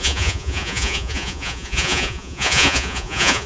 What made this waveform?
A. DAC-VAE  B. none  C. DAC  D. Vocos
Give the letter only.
D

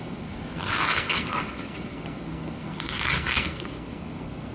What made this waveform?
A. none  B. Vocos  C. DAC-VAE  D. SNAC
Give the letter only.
D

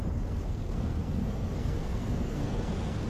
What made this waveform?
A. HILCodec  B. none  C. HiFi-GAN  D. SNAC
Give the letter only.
D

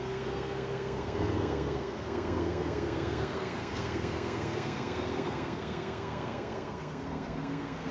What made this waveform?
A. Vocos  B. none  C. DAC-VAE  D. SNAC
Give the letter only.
D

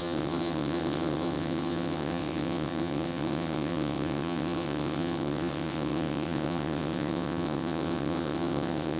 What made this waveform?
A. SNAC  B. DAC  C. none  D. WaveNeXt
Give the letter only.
D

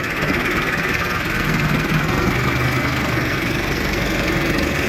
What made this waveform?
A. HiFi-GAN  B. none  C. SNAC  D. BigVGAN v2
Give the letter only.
C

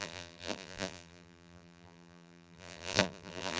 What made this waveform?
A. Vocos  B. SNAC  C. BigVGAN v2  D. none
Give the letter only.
C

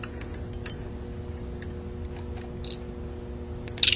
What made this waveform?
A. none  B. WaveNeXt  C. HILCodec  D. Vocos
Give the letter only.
A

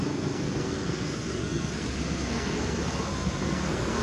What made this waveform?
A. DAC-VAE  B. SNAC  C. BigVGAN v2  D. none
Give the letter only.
B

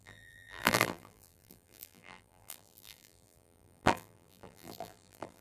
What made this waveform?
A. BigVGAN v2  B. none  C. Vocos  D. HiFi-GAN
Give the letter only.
A